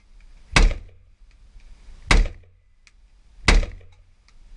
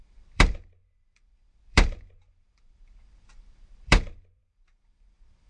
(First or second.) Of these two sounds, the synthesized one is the second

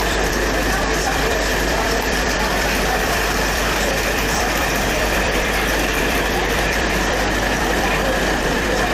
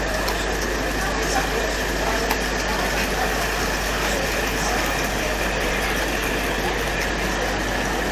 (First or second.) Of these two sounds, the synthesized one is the first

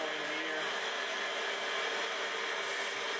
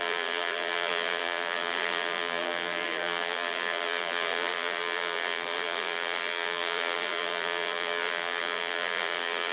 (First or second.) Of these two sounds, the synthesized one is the second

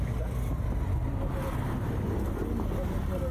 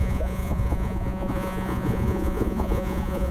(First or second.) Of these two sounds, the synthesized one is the second